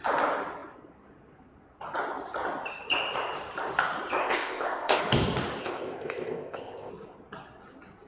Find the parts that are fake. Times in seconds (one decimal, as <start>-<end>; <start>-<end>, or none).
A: 4.2-5.0; 5.6-6.9